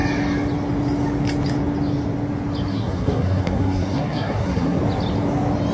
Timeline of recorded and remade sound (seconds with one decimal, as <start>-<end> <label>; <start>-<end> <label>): 0.0-2.7 recorded; 2.7-4.8 remade; 4.8-5.7 recorded